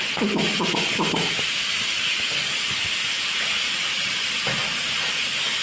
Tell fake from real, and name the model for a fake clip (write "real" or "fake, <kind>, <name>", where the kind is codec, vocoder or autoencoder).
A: real